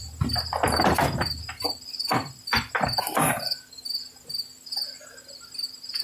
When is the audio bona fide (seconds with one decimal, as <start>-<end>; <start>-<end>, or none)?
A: 3.6-6.0